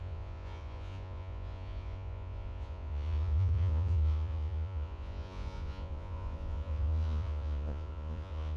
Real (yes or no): no